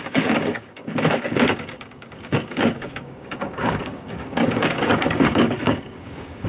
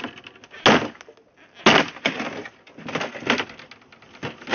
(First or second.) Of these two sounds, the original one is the second